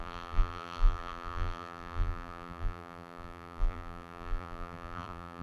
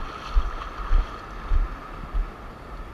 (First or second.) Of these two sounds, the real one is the second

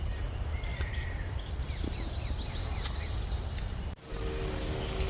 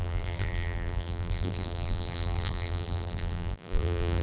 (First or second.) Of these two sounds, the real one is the first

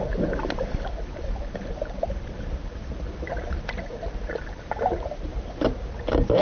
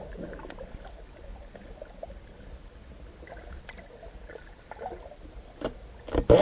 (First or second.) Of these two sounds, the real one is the second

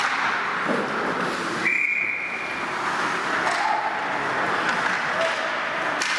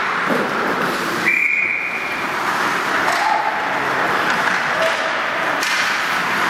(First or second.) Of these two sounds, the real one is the first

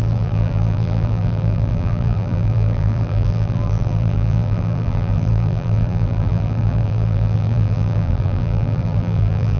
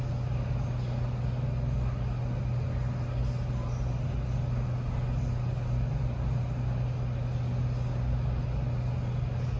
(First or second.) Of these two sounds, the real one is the second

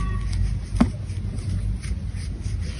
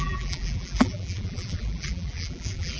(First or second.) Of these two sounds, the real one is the first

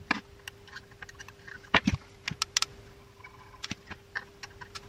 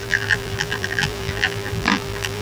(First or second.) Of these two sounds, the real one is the first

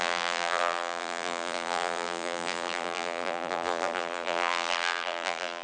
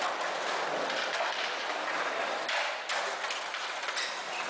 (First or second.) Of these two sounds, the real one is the second